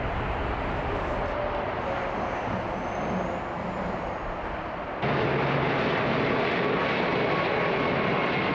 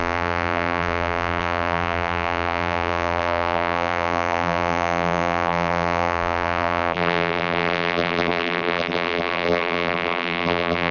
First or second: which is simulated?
second